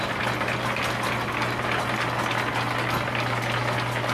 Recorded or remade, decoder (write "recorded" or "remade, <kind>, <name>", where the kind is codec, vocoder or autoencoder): recorded